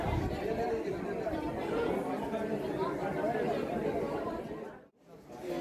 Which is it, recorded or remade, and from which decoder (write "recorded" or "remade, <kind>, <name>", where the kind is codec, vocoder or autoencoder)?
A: recorded